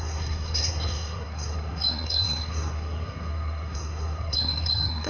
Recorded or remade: remade